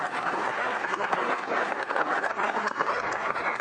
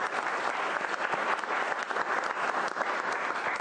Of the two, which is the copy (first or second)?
first